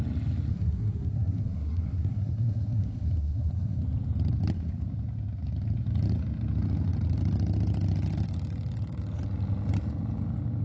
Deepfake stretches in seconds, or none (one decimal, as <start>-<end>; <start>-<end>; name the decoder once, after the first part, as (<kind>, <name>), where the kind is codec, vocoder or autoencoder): 0.5-3.8 (codec, SNAC)